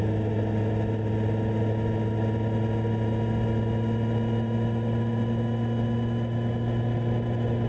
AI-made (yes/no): no